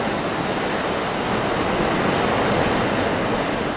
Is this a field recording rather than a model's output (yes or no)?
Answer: yes